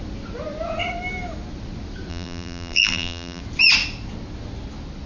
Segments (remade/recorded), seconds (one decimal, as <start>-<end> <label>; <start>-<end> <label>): 0.0-2.1 recorded; 2.1-3.4 remade; 3.4-5.1 recorded